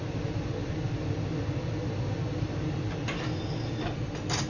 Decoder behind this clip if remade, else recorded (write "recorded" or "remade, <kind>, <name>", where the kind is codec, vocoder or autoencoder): recorded